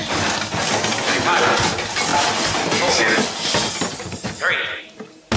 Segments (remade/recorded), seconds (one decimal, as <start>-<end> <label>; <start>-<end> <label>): 0.0-0.5 remade; 0.5-2.1 recorded; 2.1-4.8 remade; 4.8-5.4 recorded